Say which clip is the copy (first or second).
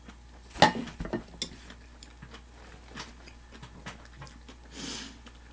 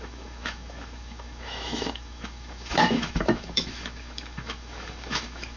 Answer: second